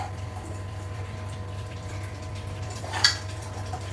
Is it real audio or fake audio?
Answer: fake